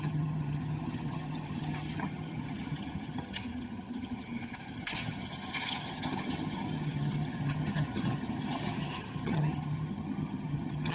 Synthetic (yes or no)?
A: yes